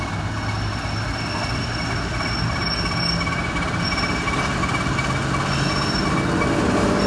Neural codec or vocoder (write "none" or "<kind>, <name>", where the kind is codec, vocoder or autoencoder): none